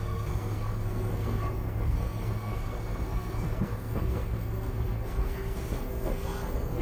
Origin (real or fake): fake